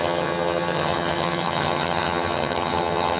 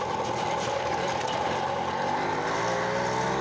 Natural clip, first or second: second